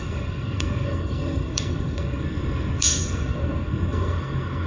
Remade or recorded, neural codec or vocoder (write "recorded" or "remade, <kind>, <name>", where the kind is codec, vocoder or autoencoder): remade, codec, SNAC